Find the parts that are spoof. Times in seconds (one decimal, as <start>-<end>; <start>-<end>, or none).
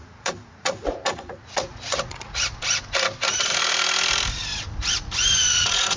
0.0-2.5; 5.5-6.0